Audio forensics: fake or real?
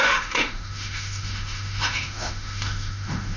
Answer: fake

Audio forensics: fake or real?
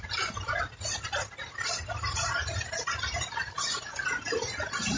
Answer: real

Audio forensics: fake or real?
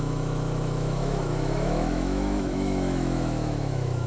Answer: fake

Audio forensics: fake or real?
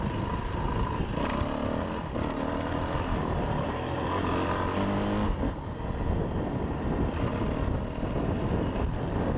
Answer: real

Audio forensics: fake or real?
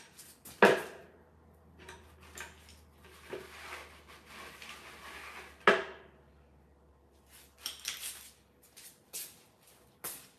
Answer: real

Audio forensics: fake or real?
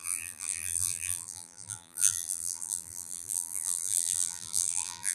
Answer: fake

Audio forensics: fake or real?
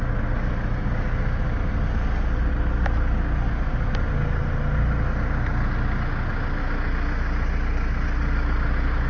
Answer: real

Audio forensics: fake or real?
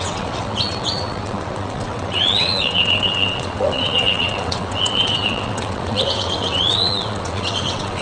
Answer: fake